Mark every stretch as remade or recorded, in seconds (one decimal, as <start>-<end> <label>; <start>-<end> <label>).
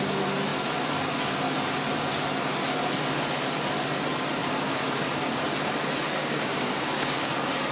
0.0-6.2 recorded; 6.2-7.3 remade; 7.3-7.7 recorded